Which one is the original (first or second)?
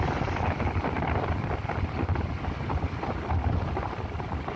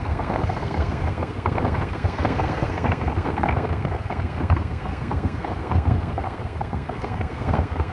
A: first